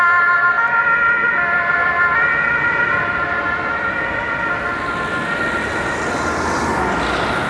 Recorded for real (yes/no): yes